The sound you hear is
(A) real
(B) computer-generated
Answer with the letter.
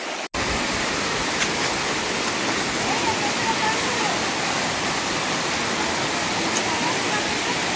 A